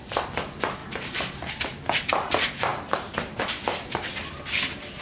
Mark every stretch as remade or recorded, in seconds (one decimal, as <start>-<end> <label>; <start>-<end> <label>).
0.0-0.8 recorded; 0.8-1.5 remade; 1.5-2.7 recorded; 2.7-3.4 remade; 3.4-5.0 recorded